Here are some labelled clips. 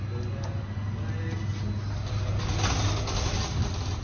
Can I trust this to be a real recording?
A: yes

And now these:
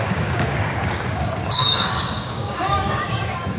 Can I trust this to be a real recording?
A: no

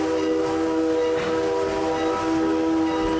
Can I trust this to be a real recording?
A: yes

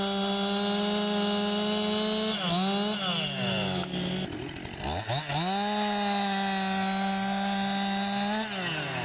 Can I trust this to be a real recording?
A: yes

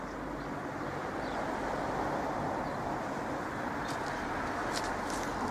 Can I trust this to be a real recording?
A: yes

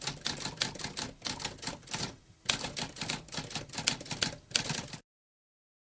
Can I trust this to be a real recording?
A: yes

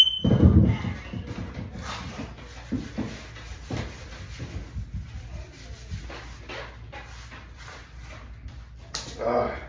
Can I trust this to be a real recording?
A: yes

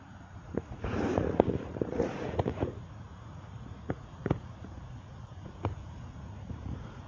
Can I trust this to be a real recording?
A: no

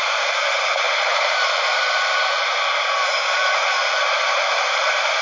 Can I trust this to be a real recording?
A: no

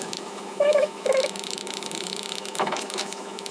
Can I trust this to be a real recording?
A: no